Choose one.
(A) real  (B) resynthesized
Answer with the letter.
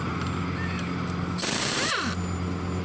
A